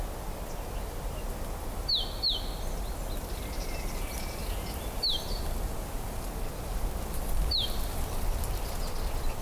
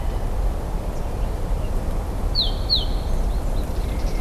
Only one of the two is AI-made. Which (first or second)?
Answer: second